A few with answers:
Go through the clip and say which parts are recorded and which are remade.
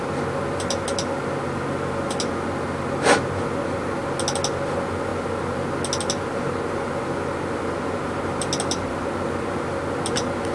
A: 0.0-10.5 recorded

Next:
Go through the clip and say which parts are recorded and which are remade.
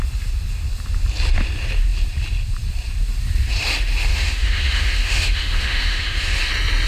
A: 0.0-4.1 recorded; 4.1-6.4 remade; 6.4-6.9 recorded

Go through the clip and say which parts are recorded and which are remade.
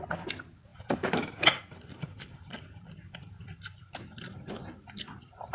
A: 0.0-0.7 recorded; 0.7-3.9 remade; 3.9-5.5 recorded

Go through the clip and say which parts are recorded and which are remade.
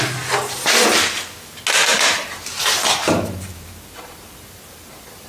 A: 0.0-1.9 recorded; 1.9-5.3 remade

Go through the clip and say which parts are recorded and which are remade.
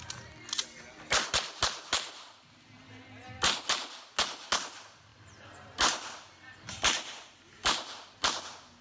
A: 0.0-8.8 recorded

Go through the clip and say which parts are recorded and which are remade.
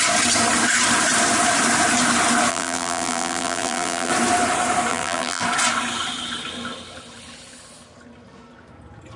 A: 0.0-2.5 recorded; 2.5-4.1 remade; 4.1-4.9 recorded; 4.9-5.4 remade; 5.4-9.2 recorded